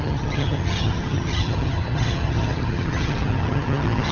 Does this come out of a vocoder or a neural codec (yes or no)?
yes